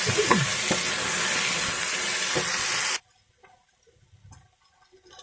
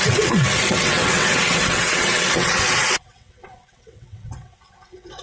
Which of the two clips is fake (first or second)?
second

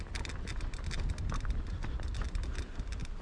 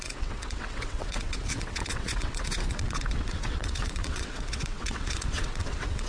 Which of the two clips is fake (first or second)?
second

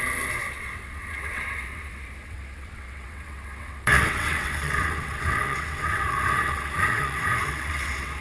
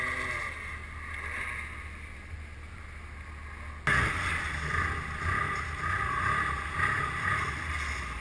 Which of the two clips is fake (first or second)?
first